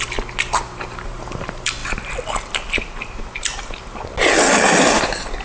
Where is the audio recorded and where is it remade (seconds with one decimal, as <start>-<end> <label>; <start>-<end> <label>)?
0.0-5.4 recorded